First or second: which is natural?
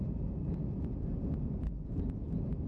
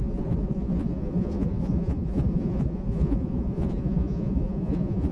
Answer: first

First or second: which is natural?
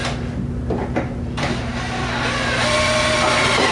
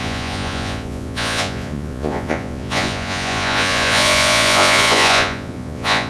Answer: first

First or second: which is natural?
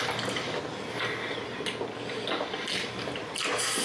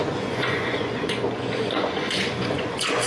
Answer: first